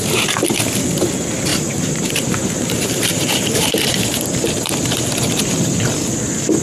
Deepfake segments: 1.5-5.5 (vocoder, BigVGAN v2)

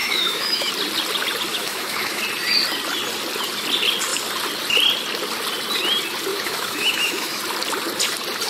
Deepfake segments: 0.0-0.7 (autoencoder, DAC-VAE); 1.5-2.2; 6.3-7.4